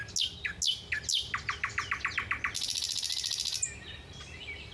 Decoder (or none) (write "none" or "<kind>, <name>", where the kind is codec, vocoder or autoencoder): none